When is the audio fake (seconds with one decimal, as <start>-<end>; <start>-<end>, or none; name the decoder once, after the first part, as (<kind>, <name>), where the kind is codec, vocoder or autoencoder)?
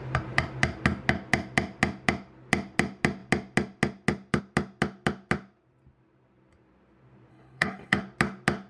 7.3-8.0 (codec, HILCodec)